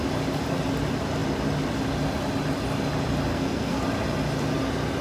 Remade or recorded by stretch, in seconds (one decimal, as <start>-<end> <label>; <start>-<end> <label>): 0.0-3.3 recorded; 3.3-3.8 remade; 3.8-5.0 recorded